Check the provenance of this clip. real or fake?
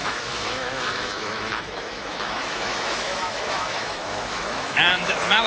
fake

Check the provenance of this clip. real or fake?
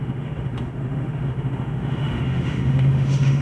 fake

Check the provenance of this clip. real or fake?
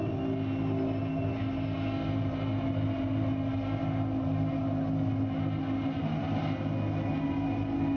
real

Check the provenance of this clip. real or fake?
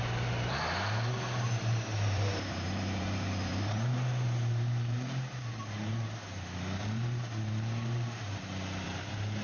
fake